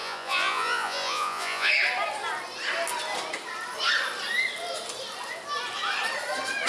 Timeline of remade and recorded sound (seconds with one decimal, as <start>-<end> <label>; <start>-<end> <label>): 0.0-1.7 remade; 1.7-6.7 recorded